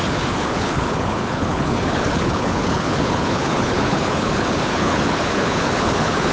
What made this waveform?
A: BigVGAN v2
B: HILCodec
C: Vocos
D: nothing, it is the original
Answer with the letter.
B